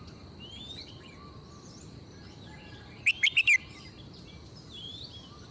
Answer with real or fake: real